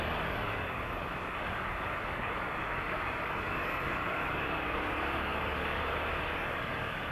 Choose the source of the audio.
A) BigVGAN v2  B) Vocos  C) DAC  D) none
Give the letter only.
C